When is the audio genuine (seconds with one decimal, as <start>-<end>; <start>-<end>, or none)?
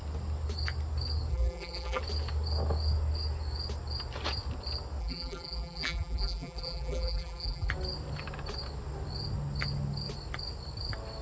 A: 0.0-1.3; 2.0-5.0; 7.7-11.2